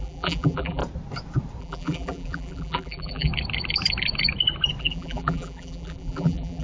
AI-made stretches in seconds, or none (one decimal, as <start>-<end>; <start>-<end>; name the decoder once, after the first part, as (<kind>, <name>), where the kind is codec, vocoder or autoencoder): 0.0-0.8 (vocoder, BigVGAN v2); 1.6-3.3; 4.8-6.6